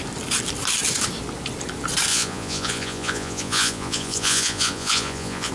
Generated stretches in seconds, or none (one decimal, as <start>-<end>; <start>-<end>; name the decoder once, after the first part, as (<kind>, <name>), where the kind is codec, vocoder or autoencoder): 2.1-5.5 (vocoder, Vocos)